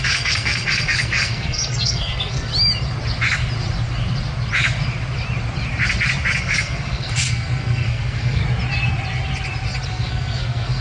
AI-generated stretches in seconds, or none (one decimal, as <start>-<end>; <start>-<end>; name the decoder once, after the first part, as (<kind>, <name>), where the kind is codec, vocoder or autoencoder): 0.0-2.5 (codec, SNAC); 6.4-8.4; 9.9-10.8